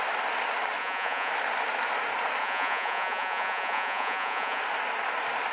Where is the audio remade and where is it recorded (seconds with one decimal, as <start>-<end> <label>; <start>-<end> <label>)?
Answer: 0.0-0.8 recorded; 0.8-1.3 remade; 1.3-2.4 recorded; 2.4-4.6 remade; 4.6-5.5 recorded